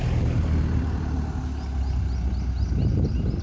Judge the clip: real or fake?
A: real